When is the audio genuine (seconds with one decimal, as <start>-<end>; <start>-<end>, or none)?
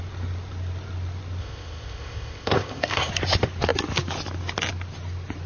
0.0-1.4; 3.1-5.5